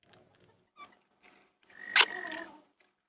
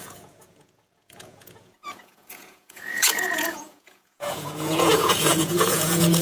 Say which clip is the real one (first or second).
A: first